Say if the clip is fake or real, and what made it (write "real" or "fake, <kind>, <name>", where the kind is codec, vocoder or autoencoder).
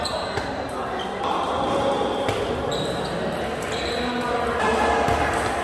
real